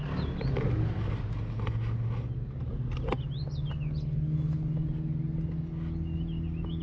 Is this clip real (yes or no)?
yes